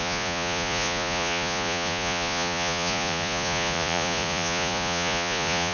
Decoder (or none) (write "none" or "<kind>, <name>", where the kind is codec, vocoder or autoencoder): vocoder, Vocos